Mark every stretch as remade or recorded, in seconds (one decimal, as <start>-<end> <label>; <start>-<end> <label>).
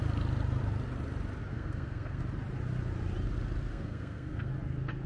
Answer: 0.0-1.5 recorded; 1.5-2.2 remade; 2.2-3.7 recorded; 3.7-4.5 remade; 4.5-5.1 recorded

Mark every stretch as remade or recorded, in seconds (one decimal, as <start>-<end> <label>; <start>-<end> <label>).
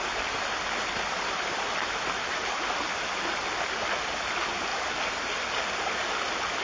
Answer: 0.0-6.6 recorded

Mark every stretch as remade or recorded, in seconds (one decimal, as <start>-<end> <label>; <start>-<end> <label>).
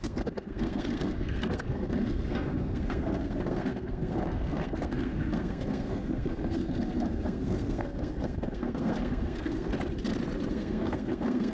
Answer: 0.0-9.7 remade; 9.7-10.5 recorded; 10.5-11.5 remade